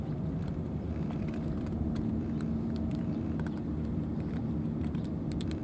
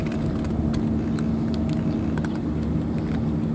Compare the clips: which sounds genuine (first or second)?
second